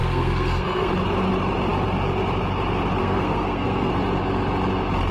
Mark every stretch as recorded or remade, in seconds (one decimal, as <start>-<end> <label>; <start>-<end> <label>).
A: 0.0-0.9 remade; 0.9-3.0 recorded; 3.0-3.9 remade; 3.9-5.1 recorded